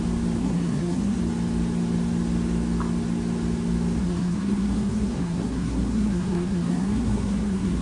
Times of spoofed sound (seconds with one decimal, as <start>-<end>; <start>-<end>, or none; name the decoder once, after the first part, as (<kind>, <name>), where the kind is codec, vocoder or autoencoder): 0.4-1.2 (codec, SNAC); 4.0-7.8